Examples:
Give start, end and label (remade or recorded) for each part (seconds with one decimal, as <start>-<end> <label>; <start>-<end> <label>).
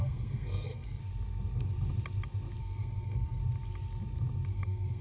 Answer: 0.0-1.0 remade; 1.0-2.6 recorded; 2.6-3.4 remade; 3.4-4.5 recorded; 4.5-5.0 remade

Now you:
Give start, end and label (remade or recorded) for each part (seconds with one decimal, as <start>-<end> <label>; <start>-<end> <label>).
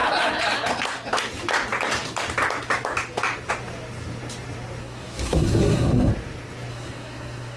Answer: 0.0-4.8 recorded; 4.8-6.1 remade; 6.1-6.7 recorded; 6.7-7.6 remade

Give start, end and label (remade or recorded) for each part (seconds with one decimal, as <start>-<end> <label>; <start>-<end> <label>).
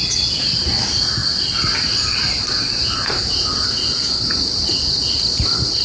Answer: 0.0-5.8 recorded